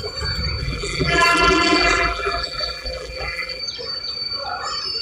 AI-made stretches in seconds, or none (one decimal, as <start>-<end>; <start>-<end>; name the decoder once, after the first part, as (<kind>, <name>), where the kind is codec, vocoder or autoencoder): 0.6-3.6 (vocoder, BigVGAN v2)